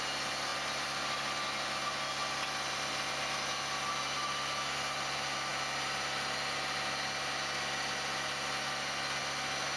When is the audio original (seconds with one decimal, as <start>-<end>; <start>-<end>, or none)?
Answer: 0.0-9.8